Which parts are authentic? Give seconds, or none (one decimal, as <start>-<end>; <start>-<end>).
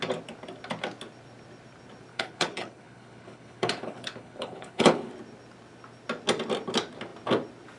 0.0-2.1; 5.1-7.8